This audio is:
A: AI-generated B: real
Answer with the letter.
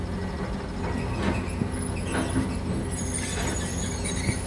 B